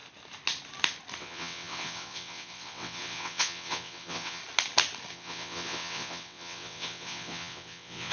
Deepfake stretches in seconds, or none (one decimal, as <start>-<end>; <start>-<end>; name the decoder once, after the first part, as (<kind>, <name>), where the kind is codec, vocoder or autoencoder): 1.2-4.4 (vocoder, WaveNeXt); 5.1-8.1